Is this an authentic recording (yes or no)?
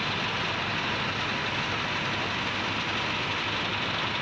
yes